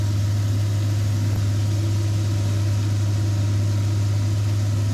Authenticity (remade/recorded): recorded